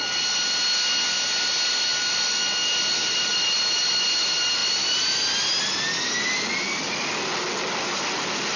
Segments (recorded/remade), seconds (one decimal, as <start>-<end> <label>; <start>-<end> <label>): 0.0-8.6 recorded